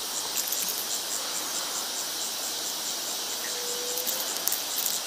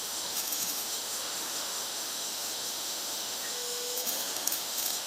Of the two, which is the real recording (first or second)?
first